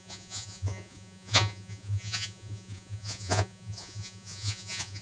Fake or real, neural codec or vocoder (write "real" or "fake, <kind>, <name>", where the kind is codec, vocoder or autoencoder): fake, vocoder, Vocos